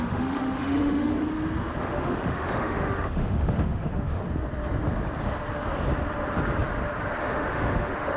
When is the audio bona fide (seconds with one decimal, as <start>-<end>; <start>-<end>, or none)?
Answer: 1.1-1.8; 4.2-7.2